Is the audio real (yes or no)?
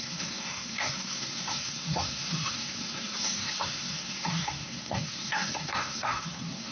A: no